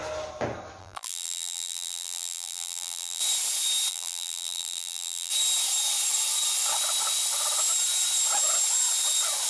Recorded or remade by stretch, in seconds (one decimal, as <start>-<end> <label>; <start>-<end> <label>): 0.0-0.8 recorded; 0.8-3.2 remade; 3.2-3.9 recorded; 3.9-5.3 remade; 5.3-9.5 recorded